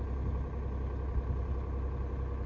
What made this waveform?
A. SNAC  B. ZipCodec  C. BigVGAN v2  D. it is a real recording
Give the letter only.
D